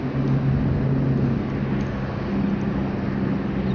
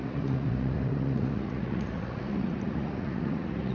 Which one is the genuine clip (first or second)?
first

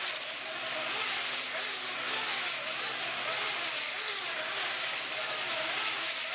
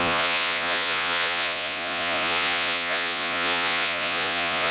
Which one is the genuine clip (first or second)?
first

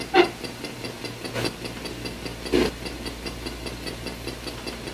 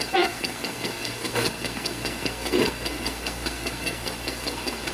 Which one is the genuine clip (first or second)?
first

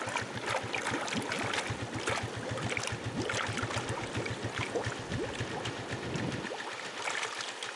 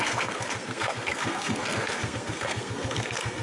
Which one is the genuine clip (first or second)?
first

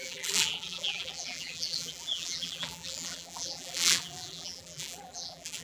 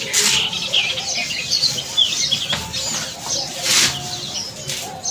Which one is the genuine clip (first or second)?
second